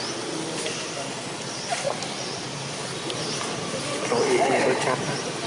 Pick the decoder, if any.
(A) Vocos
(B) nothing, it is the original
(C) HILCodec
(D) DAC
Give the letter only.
B